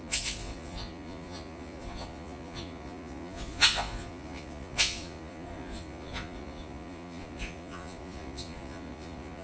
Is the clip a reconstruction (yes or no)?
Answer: yes